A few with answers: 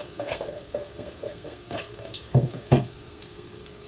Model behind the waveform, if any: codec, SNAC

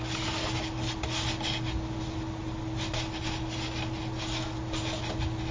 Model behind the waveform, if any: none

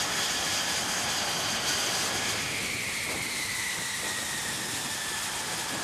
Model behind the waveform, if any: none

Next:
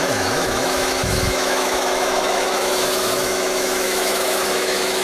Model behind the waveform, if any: autoencoder, DAC-VAE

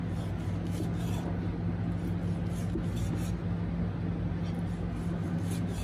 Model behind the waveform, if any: none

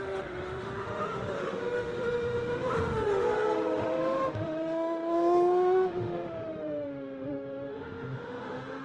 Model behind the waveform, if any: autoencoder, DAC-VAE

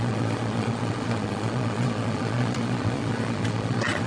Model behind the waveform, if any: vocoder, Vocos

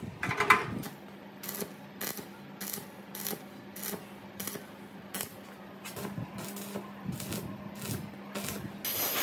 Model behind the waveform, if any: none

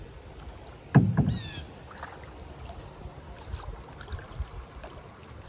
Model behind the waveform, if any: none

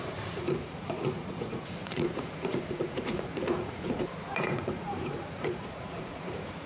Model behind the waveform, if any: vocoder, Vocos